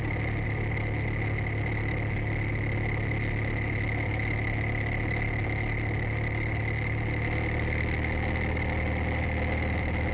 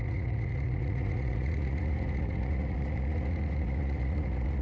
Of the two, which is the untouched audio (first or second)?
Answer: first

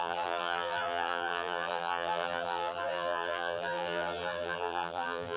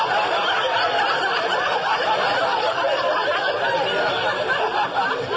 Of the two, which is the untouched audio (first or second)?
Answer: second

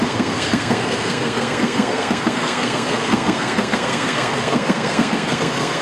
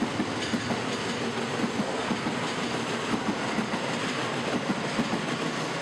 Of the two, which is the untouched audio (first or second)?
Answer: second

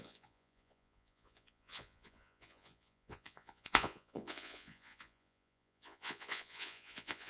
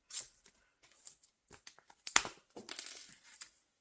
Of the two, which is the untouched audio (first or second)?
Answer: second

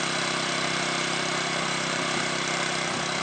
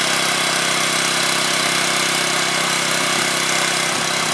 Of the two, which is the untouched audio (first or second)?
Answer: second